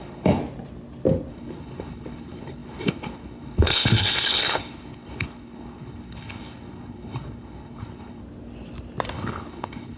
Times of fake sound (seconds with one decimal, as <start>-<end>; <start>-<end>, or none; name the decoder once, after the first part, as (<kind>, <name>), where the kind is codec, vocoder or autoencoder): 0.0-0.4 (codec, HILCodec); 1.3-8.2; 9.1-10.0